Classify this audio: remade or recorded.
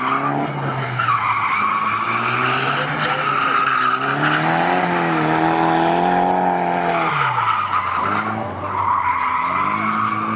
recorded